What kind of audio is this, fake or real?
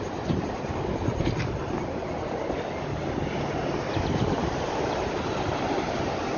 real